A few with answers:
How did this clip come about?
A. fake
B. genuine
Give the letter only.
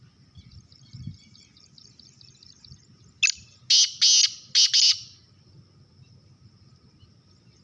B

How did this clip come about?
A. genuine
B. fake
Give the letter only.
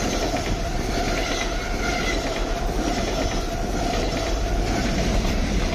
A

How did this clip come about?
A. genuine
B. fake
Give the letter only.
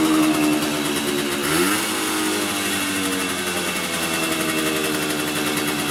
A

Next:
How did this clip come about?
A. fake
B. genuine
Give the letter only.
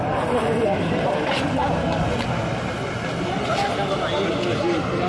B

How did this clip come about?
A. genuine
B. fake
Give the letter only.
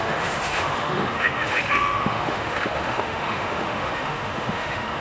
B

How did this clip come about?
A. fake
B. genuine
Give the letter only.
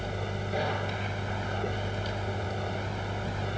B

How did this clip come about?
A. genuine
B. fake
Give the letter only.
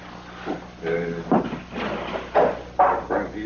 A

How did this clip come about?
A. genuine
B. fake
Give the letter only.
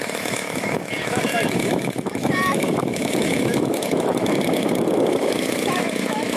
B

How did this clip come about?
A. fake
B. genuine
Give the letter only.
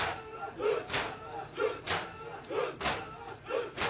B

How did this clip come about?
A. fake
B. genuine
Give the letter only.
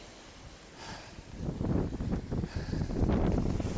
B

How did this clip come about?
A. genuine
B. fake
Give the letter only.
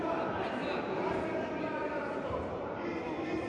A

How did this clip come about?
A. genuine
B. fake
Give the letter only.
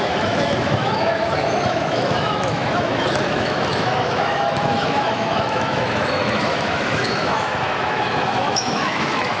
B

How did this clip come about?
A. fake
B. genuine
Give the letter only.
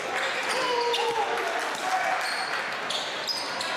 B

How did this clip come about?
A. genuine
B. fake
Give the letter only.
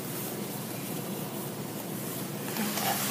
A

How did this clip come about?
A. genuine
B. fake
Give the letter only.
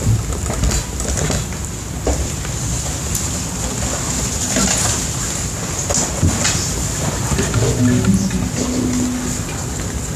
A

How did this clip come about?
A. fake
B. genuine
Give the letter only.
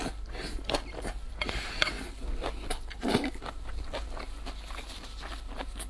B